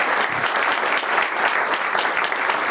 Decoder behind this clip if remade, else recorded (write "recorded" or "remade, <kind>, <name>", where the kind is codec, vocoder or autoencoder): remade, vocoder, BigVGAN v2